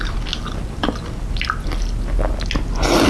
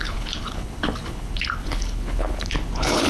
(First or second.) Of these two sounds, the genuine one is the first